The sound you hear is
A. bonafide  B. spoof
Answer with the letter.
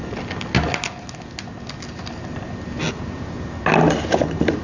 A